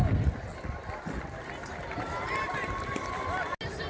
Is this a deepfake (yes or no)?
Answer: no